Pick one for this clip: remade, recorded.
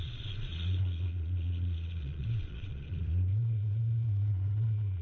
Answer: remade